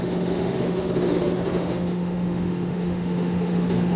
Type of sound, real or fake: fake